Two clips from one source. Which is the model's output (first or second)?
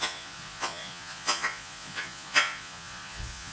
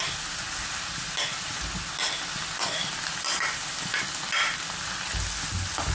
first